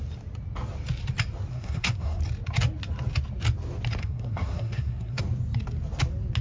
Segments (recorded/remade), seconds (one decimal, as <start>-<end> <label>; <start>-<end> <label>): 0.0-1.5 recorded; 1.5-2.2 remade; 2.2-4.0 recorded; 4.0-5.2 remade; 5.2-6.4 recorded